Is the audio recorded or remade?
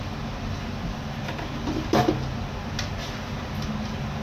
recorded